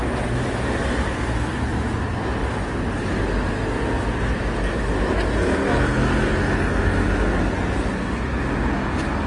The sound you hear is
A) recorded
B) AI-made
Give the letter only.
A